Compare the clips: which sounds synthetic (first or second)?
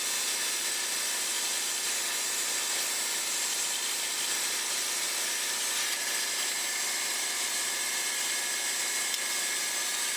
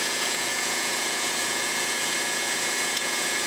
second